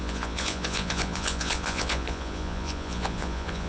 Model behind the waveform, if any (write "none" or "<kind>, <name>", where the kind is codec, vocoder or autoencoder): vocoder, Vocos